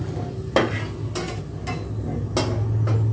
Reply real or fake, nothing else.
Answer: real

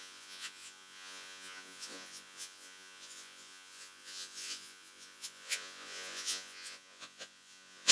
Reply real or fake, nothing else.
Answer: fake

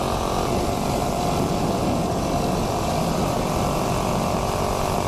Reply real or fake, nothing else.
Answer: real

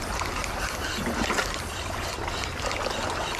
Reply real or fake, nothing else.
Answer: real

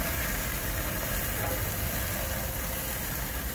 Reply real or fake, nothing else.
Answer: real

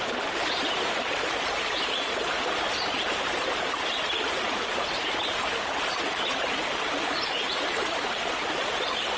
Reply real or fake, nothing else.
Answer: real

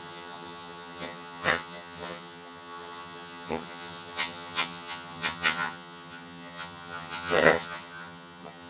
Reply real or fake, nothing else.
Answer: fake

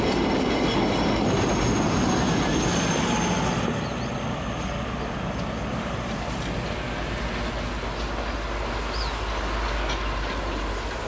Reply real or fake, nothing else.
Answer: real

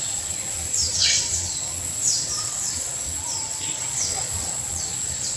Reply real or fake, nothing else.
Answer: fake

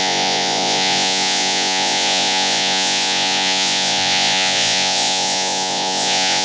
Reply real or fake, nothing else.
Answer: fake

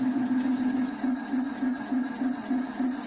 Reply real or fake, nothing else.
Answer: real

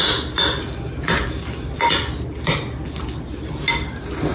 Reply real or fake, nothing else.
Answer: real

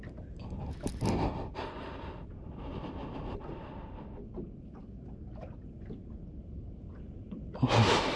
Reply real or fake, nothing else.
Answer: real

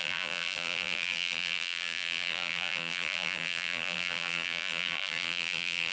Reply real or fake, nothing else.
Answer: fake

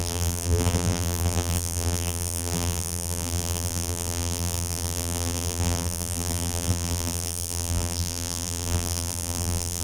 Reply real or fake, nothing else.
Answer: fake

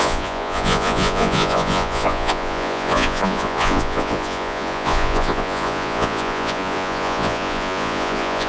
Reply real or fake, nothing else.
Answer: fake